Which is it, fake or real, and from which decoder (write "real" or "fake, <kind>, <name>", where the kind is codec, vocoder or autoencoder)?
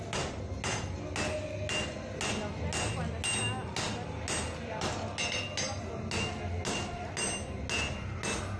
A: real